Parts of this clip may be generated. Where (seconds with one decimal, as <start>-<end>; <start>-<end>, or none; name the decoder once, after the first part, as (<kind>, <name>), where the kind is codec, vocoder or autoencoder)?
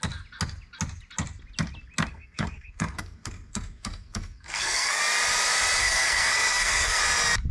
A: 2.1-5.0 (codec, SNAC); 5.8-7.0